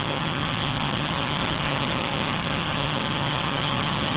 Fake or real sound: fake